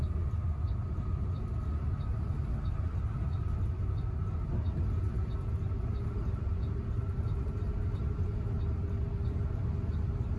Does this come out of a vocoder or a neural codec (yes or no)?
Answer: no